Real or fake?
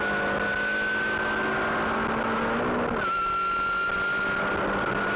real